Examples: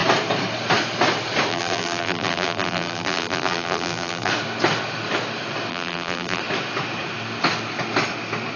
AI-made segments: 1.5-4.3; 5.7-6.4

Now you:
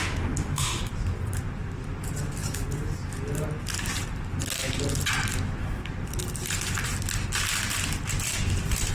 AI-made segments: 0.0-0.8

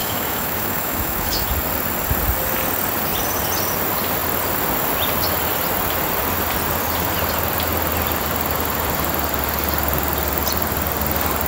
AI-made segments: 0.0-1.5